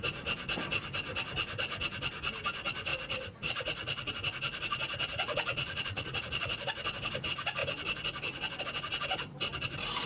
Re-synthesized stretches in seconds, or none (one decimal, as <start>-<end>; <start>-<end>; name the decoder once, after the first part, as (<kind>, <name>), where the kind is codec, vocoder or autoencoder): 2.9-4.1 (vocoder, Vocos); 5.1-6.6